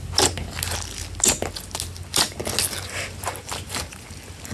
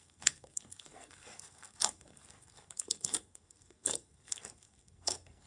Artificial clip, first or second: second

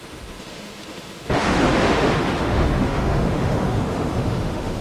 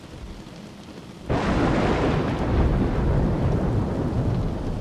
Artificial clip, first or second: first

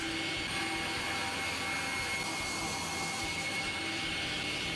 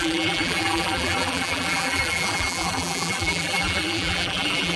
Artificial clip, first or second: second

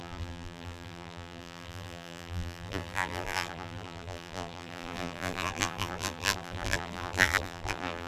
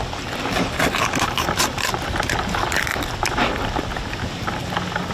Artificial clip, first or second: first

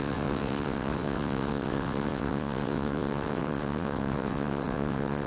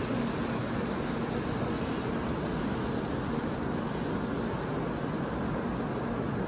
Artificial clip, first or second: first